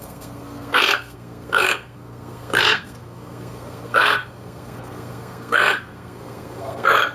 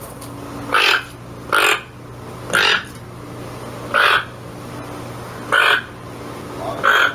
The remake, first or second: first